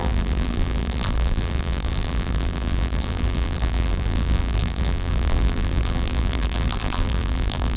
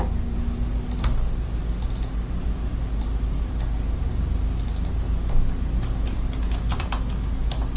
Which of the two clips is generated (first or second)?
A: first